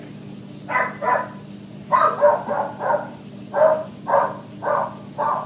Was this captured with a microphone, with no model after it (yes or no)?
yes